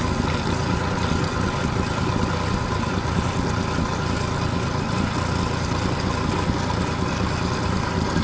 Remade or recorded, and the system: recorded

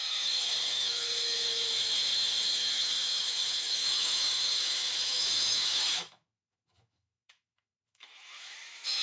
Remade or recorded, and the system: remade, autoencoder, DAC-VAE